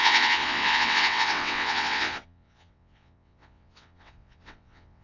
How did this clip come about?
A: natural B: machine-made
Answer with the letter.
B